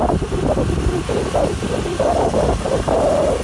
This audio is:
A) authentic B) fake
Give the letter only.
A